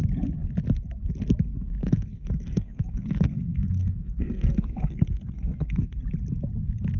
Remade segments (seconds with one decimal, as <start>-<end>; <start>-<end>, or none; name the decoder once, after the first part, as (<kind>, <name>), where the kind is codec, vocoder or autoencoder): 1.8-6.0 (codec, SNAC)